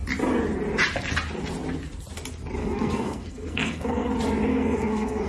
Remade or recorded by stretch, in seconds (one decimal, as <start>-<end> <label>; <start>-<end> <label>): 0.0-2.6 recorded; 2.6-4.1 remade; 4.1-4.5 recorded; 4.5-5.3 remade